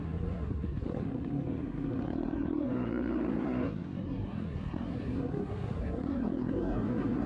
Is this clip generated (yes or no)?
yes